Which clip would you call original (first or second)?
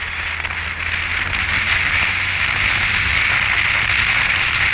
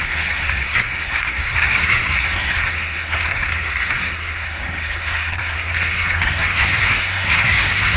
first